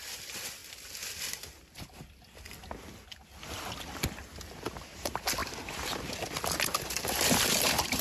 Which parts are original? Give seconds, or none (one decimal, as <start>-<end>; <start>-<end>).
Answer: 0.0-8.0